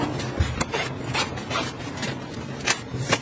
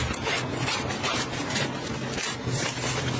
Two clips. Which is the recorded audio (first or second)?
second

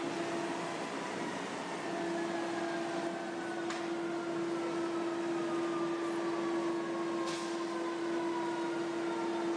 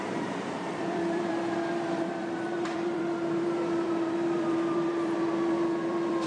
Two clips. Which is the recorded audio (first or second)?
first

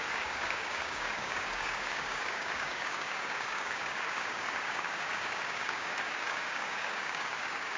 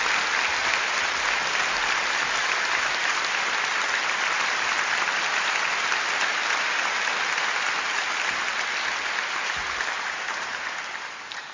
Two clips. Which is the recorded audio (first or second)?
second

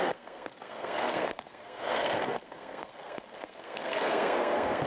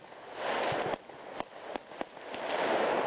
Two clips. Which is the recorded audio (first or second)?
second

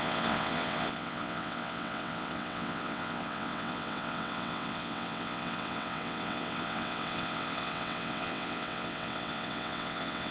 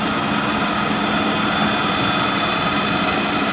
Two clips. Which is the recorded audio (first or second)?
second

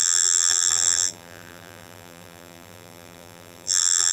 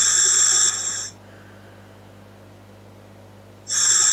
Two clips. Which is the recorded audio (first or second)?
second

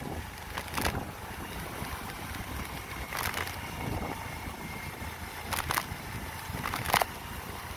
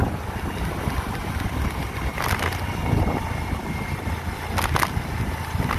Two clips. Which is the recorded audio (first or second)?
second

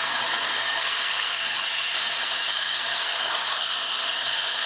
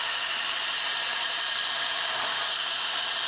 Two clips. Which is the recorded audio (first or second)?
second